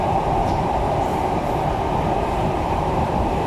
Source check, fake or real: fake